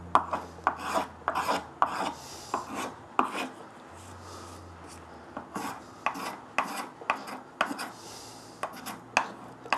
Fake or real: real